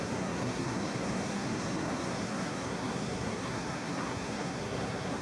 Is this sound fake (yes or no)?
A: yes